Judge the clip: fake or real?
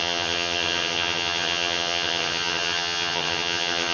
fake